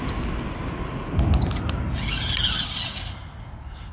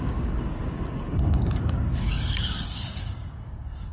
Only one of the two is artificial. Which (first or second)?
second